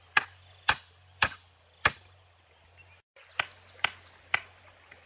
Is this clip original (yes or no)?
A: yes